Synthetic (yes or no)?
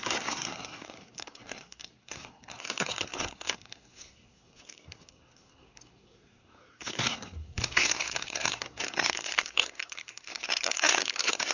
yes